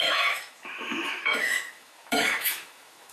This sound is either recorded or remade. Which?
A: remade